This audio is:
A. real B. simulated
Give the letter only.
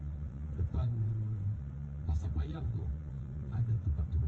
B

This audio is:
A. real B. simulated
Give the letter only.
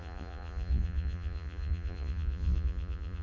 B